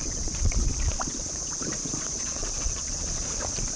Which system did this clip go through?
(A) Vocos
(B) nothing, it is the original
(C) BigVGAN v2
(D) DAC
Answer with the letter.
A